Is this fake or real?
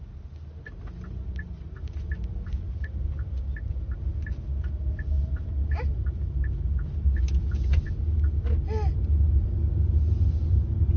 real